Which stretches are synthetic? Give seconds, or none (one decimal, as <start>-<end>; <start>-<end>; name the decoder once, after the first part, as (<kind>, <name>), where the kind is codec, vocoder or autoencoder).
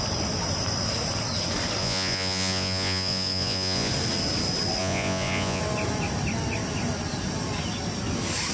1.8-3.9 (vocoder, Vocos); 4.8-5.6